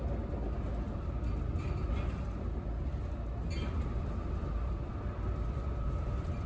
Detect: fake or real real